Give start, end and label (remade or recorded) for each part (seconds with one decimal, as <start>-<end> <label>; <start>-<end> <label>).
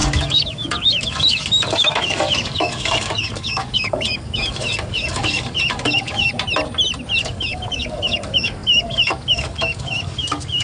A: 0.0-6.3 remade; 6.3-7.2 recorded; 7.2-10.6 remade